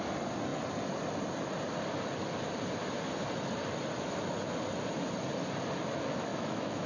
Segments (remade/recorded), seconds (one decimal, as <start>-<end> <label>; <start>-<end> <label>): 0.0-6.3 recorded; 6.3-6.9 remade